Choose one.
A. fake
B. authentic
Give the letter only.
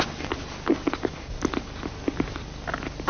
B